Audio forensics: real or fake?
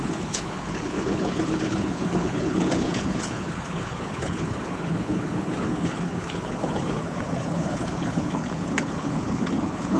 fake